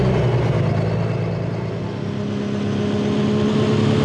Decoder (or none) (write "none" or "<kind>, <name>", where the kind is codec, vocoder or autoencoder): none